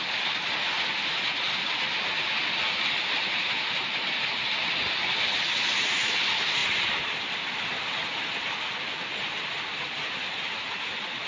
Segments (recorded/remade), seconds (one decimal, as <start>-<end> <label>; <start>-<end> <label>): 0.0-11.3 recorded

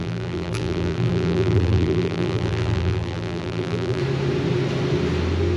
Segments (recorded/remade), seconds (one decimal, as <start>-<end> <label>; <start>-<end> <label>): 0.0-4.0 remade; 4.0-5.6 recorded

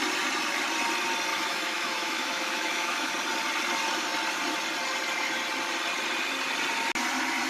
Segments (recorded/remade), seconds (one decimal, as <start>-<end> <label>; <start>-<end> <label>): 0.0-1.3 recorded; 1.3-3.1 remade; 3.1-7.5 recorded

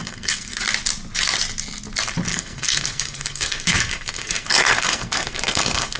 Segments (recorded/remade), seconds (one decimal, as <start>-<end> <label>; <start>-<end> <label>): 0.0-0.6 remade; 0.6-2.3 recorded; 2.3-6.0 remade